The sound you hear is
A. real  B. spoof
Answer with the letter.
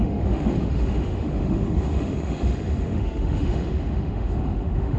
B